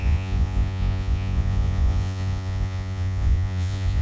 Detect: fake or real fake